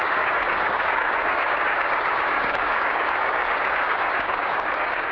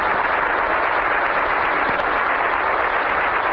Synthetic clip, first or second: first